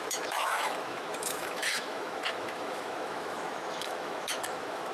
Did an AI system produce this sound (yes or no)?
yes